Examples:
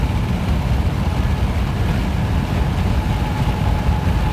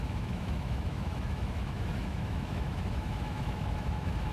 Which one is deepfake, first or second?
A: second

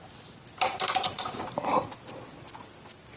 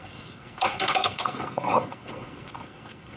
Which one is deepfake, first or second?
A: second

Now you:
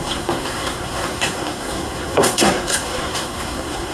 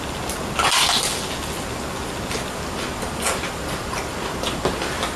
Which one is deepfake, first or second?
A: first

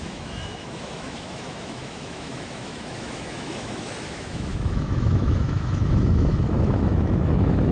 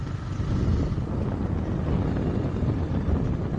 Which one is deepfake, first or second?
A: first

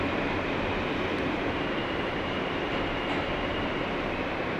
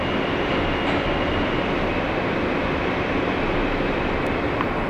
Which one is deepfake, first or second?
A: first